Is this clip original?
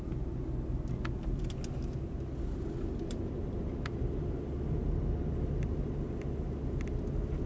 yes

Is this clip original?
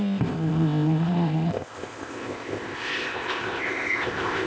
no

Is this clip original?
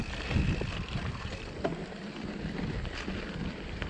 yes